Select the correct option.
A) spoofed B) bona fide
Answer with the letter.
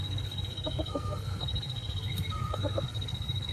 A